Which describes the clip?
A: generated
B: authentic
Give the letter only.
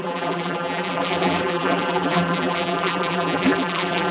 A